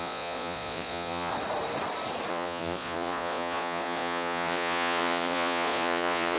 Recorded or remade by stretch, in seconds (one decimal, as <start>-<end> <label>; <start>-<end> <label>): 0.0-1.3 remade; 1.3-2.3 recorded; 2.3-6.4 remade